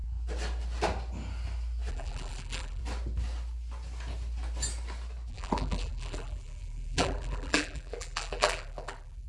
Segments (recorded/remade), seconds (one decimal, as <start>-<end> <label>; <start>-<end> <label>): 0.0-1.9 recorded; 1.9-2.8 remade; 2.8-5.3 recorded; 5.3-9.3 remade